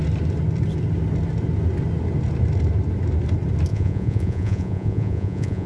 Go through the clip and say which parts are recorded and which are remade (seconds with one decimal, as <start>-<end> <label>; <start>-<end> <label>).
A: 0.0-3.7 recorded; 3.7-5.7 remade